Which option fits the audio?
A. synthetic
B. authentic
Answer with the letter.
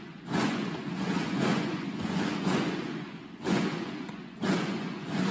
A